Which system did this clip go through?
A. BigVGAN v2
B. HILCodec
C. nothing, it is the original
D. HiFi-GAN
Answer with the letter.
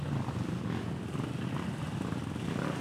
C